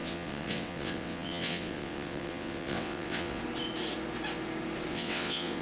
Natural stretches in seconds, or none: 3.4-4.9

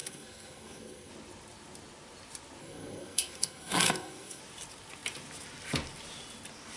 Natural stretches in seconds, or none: 1.1-2.6; 4.4-6.8